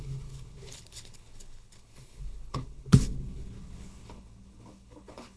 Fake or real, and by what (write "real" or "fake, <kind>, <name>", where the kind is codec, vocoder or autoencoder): fake, codec, HILCodec